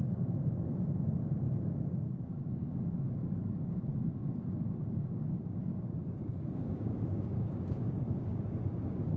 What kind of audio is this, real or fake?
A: fake